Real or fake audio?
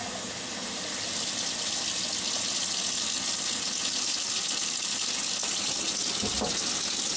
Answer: real